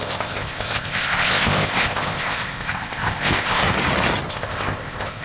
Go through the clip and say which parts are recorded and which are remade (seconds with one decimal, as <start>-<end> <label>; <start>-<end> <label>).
0.0-3.6 remade; 3.6-4.3 recorded; 4.3-5.2 remade